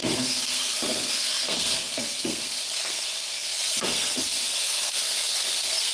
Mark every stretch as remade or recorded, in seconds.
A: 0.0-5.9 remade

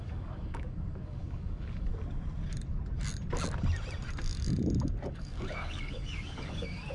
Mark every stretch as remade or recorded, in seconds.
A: 0.0-1.9 remade; 1.9-5.1 recorded; 5.1-6.9 remade